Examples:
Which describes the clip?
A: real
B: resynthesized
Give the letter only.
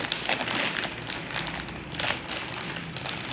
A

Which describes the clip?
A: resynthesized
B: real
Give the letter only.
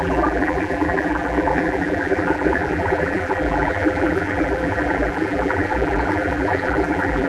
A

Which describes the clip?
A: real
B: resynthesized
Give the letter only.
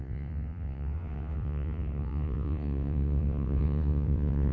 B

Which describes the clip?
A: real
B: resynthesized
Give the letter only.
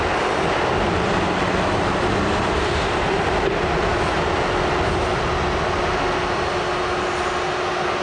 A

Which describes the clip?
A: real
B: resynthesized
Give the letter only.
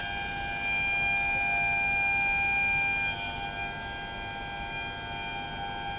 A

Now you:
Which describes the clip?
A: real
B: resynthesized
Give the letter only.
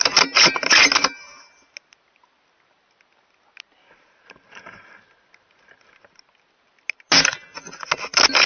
A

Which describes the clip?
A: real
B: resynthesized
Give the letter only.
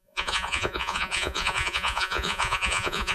B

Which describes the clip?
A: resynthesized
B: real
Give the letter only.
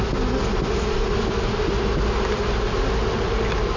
B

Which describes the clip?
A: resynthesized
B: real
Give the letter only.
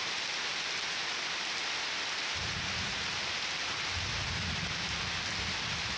B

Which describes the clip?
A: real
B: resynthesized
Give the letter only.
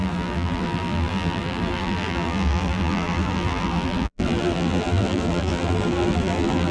B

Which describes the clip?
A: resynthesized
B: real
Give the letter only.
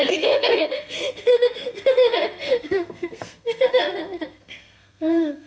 A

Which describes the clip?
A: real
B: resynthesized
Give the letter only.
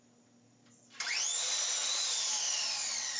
A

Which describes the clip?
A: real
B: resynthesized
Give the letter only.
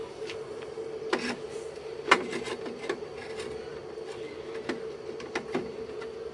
A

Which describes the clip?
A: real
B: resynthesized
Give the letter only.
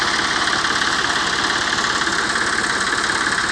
A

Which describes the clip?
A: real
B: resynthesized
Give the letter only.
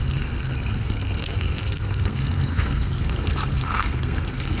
B